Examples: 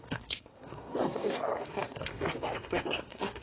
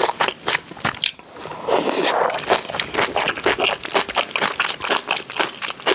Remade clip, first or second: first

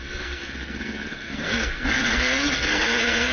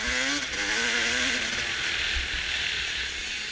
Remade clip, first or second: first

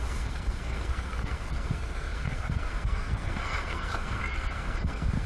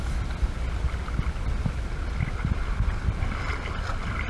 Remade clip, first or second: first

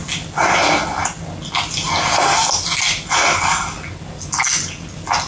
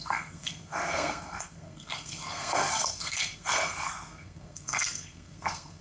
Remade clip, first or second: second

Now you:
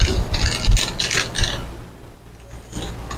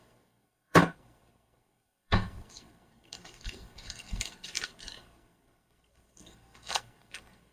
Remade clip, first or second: second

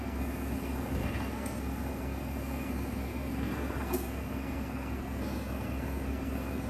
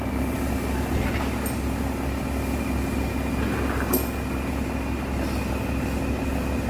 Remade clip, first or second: first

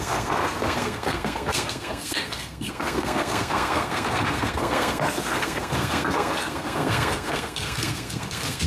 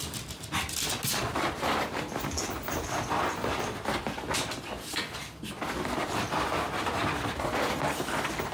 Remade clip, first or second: first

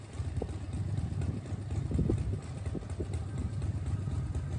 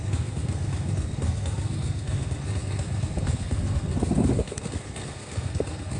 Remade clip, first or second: second